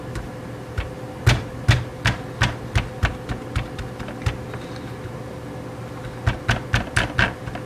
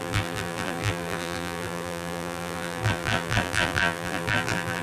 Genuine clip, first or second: first